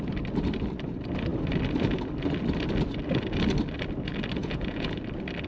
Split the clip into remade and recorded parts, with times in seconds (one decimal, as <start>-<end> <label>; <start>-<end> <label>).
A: 0.0-4.4 recorded; 4.4-5.0 remade; 5.0-5.5 recorded